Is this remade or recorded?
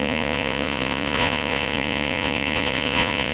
remade